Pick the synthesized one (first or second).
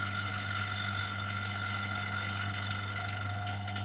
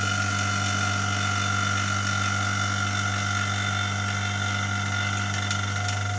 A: first